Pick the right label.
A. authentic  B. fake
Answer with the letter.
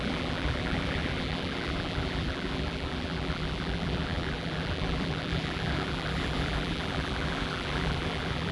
B